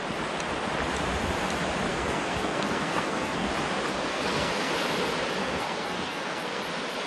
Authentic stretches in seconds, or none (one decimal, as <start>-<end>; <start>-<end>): 0.0-1.9; 3.5-4.1; 4.7-5.4; 6.6-7.1